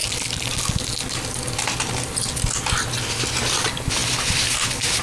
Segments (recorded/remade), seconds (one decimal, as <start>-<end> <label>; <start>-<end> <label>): 0.0-5.0 recorded